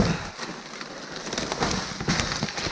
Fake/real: real